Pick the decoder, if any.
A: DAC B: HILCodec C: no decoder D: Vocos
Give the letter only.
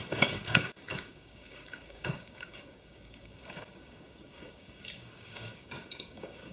A